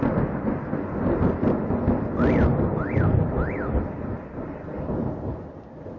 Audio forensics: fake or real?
real